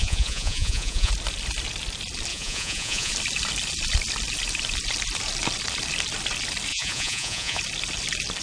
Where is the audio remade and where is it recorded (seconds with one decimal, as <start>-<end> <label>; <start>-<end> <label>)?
0.0-1.1 remade; 1.1-2.3 recorded; 2.3-3.1 remade; 3.1-6.7 recorded; 6.7-7.6 remade; 7.6-8.4 recorded